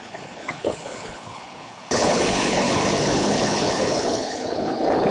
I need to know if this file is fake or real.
fake